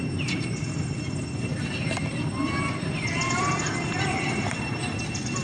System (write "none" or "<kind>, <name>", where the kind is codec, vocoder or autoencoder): none